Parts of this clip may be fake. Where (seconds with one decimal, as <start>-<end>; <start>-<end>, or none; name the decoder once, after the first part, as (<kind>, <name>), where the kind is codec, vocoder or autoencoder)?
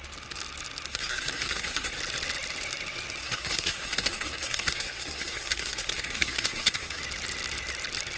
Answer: 0.9-1.9 (codec, SNAC); 3.2-7.0